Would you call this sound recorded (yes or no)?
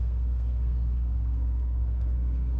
no